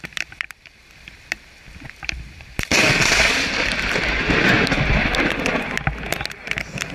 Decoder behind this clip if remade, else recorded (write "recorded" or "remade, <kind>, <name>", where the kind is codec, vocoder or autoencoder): recorded